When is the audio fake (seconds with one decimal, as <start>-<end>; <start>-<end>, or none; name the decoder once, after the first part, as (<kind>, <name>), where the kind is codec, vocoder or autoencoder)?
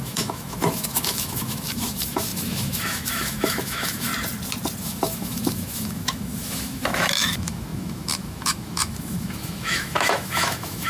0.0-4.1 (autoencoder, DAC-VAE); 4.8-10.9